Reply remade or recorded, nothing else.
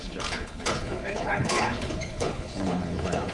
remade